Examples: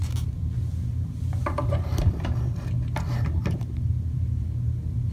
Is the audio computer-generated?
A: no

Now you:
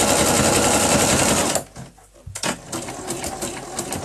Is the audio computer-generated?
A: no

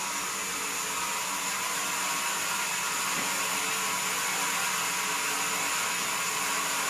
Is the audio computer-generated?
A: no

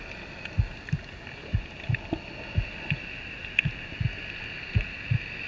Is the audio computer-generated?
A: no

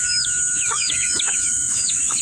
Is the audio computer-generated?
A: yes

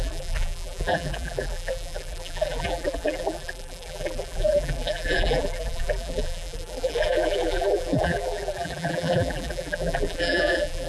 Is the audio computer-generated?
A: yes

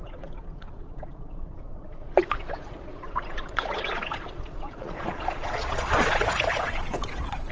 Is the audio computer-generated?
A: yes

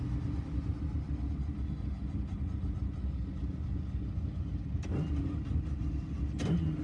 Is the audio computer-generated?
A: no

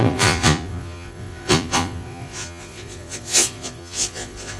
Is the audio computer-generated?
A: yes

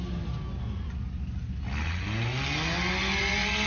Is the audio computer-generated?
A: no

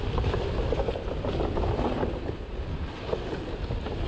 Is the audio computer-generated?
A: no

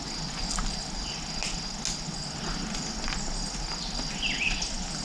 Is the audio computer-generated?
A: no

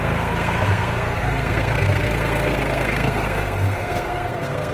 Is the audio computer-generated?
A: yes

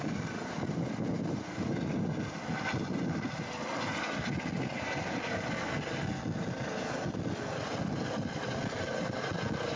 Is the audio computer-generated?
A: no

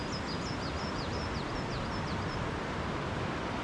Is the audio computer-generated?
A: no